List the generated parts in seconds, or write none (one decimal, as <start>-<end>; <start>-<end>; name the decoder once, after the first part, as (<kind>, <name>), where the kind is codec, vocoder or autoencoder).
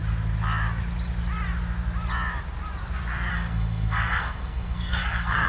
3.3-5.5 (codec, SNAC)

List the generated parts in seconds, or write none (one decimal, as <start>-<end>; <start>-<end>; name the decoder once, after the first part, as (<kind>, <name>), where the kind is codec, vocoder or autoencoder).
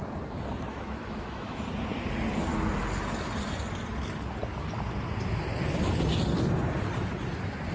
0.7-1.6 (autoencoder, DAC-VAE)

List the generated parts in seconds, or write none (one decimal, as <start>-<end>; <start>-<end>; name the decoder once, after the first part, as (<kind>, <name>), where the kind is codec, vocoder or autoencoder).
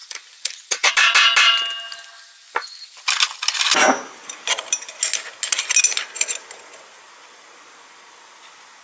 0.0-0.9 (vocoder, Vocos)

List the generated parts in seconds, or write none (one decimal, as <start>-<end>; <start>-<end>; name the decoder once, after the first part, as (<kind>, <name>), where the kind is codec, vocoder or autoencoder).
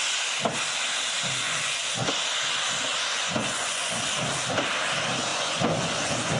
1.4-2.0 (vocoder, Vocos); 2.9-3.9; 5.3-6.4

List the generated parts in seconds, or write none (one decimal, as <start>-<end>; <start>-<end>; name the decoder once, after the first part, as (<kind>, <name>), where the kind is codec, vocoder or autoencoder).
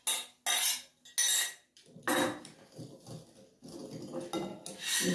none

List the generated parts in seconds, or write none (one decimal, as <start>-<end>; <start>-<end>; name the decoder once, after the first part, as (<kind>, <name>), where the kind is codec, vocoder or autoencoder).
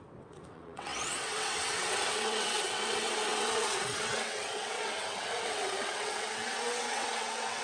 0.0-7.6 (vocoder, WaveNeXt)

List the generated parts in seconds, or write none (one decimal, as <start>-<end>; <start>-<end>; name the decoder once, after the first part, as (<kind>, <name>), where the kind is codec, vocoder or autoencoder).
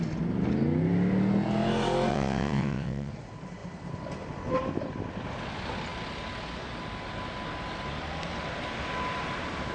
2.1-3.1 (vocoder, WaveNeXt)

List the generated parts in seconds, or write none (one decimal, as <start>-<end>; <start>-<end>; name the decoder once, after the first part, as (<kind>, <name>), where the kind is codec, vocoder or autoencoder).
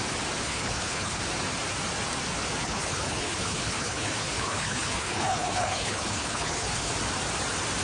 0.4-1.2 (codec, HILCodec); 2.6-6.9